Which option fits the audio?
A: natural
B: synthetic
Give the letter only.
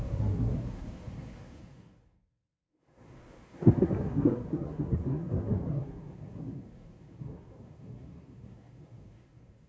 B